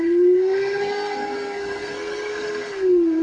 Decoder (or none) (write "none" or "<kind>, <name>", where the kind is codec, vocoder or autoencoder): codec, SNAC